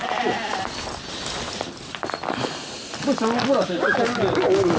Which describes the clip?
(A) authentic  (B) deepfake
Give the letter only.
A